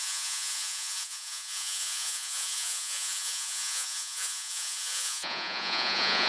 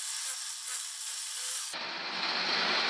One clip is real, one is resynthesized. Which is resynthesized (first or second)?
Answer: first